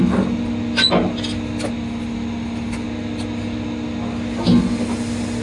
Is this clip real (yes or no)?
yes